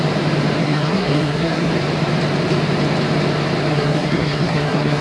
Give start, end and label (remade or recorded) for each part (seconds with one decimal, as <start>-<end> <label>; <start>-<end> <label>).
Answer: 0.0-0.6 recorded; 0.6-1.7 remade; 1.7-3.7 recorded; 3.7-5.0 remade